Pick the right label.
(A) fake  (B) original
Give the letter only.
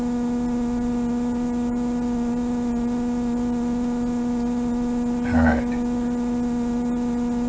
B